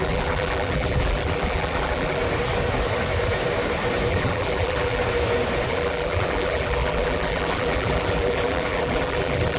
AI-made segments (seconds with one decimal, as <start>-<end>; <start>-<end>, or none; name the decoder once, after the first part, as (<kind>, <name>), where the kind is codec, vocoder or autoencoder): 0.0-2.2 (vocoder, BigVGAN v2); 4.1-5.0; 5.7-9.6